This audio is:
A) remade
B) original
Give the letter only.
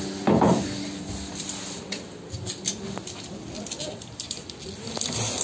B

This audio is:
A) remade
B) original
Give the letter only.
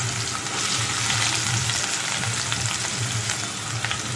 B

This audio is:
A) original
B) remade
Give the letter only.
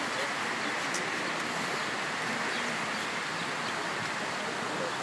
A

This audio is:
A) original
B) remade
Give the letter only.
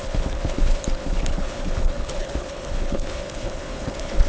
B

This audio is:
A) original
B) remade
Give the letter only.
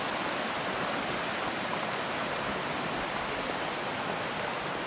A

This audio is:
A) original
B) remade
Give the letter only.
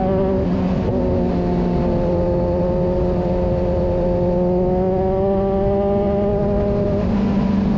A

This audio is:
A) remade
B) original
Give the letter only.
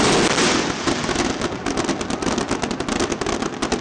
B